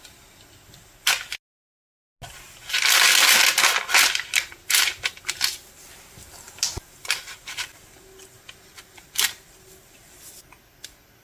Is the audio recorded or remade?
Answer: recorded